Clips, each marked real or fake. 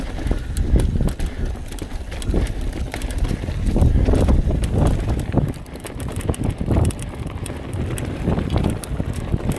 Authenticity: real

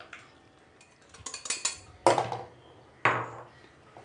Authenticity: real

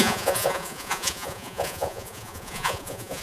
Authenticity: fake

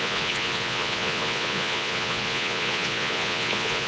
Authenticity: fake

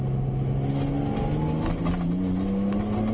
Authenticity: real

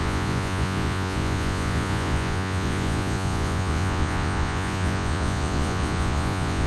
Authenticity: fake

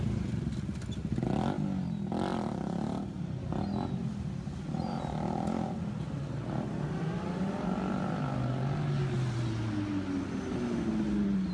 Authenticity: real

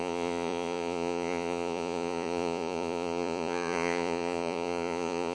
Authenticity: fake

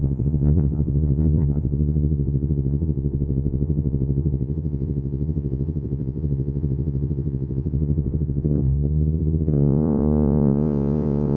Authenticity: fake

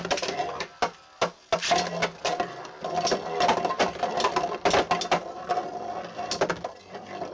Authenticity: real